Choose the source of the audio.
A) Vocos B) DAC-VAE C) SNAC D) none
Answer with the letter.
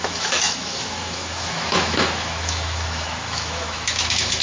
B